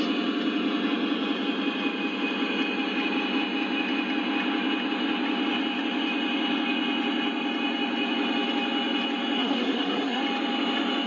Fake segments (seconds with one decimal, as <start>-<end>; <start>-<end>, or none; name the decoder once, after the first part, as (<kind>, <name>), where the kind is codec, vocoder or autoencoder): 9.4-10.2 (codec, SNAC)